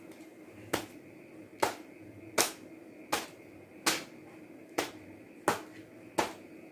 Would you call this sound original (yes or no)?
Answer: yes